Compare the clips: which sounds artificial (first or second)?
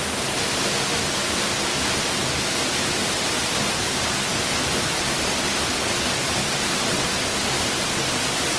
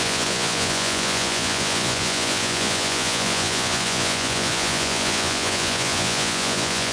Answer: second